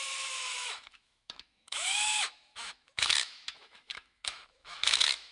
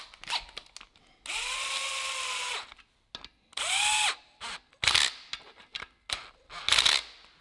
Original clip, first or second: second